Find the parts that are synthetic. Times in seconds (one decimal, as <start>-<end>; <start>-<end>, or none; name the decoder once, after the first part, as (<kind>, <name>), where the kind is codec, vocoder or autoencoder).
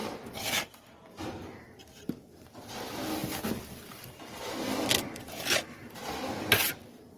0.0-2.6 (vocoder, BigVGAN v2)